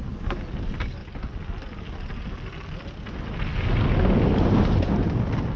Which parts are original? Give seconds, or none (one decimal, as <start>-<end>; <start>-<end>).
0.0-5.6